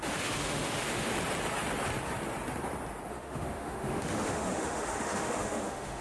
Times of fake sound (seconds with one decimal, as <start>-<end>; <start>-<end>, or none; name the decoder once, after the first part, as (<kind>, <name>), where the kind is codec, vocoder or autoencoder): 0.0-1.1 (autoencoder, DAC-VAE); 3.1-6.0

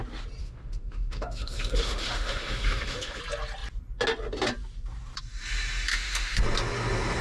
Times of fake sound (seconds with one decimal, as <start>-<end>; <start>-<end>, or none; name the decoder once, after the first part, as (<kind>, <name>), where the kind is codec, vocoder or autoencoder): 0.4-3.2 (autoencoder, DAC-VAE); 5.9-6.4

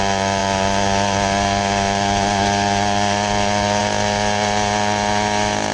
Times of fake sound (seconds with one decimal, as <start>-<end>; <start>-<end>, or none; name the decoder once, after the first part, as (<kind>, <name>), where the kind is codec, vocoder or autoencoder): none

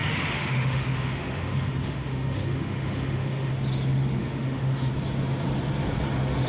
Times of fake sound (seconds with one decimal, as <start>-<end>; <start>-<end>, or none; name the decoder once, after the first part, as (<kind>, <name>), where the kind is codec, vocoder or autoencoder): 0.0-3.5 (autoencoder, DAC-VAE); 4.2-4.9

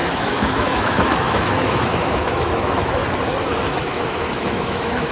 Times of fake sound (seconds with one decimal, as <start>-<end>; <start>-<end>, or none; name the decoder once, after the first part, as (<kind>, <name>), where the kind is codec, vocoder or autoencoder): 0.0-3.0 (autoencoder, DAC-VAE); 3.7-5.1

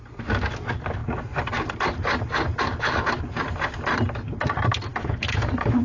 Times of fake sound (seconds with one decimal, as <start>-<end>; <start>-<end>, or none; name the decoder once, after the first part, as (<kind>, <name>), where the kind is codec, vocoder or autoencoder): 4.9-5.8 (autoencoder, DAC-VAE)

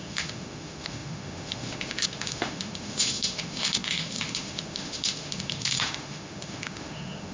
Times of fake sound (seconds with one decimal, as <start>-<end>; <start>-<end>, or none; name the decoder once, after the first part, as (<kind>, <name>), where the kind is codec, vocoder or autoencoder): 0.0-7.3 (autoencoder, DAC-VAE)